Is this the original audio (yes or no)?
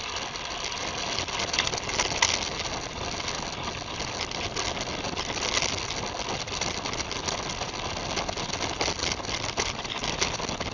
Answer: yes